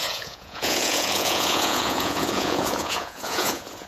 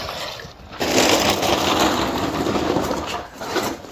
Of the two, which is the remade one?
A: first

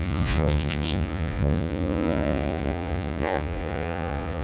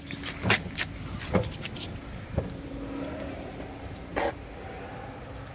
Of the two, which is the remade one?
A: first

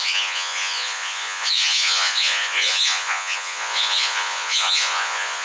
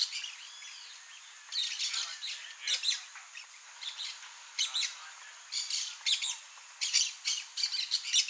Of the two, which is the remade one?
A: first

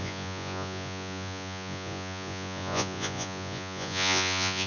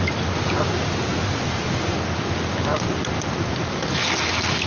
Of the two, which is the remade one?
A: first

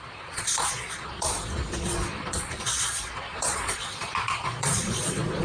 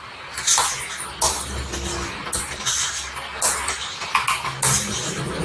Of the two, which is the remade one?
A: first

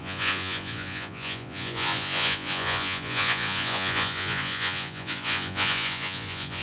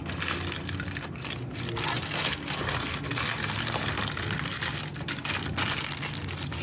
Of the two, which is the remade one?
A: first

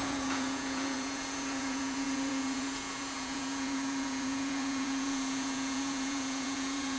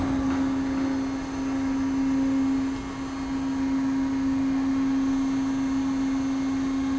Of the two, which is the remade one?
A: first